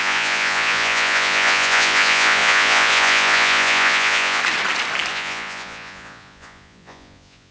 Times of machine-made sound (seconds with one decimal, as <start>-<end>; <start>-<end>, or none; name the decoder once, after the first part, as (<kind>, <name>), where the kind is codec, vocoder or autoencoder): 0.0-4.4 (vocoder, Vocos); 5.1-7.5